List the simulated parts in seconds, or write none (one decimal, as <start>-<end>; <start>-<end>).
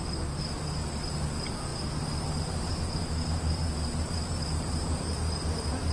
0.0-5.9